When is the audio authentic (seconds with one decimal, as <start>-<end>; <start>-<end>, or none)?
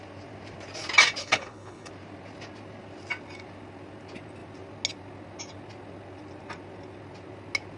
0.0-1.2; 1.9-7.8